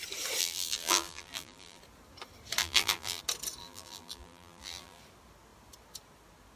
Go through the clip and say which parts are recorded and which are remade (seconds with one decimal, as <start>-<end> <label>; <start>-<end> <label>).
0.0-0.4 recorded; 0.4-1.8 remade; 1.8-2.6 recorded; 2.6-3.2 remade; 3.2-3.6 recorded; 3.6-5.0 remade; 5.0-6.6 recorded